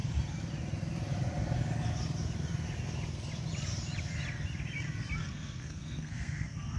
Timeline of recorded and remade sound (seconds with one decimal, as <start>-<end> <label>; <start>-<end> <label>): 0.0-5.2 recorded; 5.2-6.8 remade